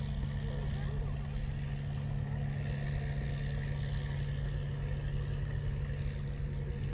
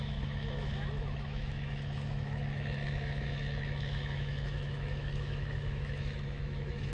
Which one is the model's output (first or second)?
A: second